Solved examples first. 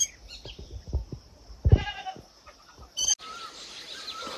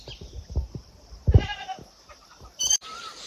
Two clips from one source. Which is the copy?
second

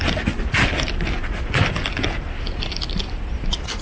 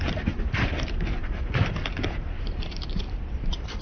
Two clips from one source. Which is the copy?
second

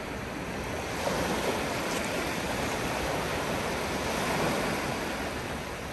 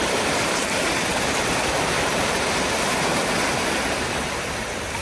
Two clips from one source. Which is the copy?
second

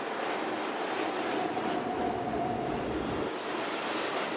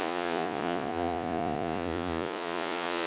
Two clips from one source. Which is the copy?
second